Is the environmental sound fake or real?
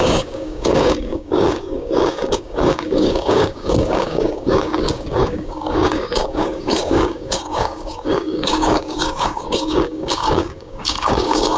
fake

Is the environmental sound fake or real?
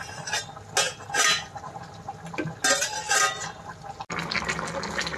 real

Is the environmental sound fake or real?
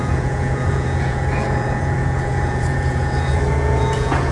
fake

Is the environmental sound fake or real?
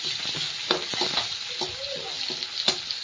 real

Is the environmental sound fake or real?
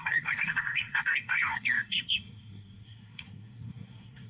fake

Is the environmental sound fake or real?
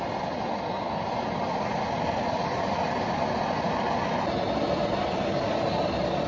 real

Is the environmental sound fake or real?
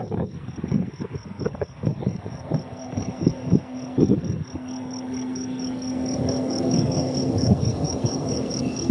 fake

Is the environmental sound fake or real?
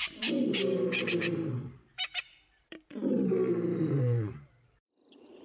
fake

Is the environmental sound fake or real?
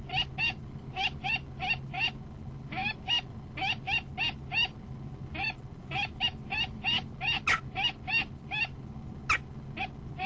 real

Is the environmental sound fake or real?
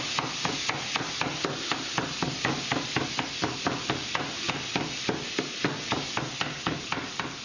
real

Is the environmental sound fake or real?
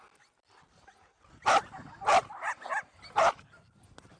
real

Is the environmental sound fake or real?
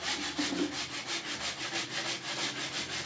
real